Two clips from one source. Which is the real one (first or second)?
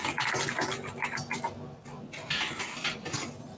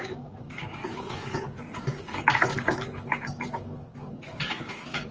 first